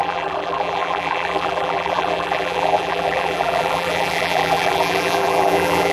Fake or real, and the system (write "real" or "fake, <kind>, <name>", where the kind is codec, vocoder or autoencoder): fake, vocoder, BigVGAN v2